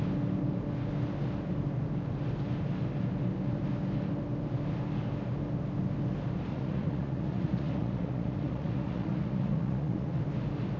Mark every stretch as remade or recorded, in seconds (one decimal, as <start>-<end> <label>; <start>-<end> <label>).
0.0-6.5 recorded; 6.5-10.2 remade; 10.2-10.8 recorded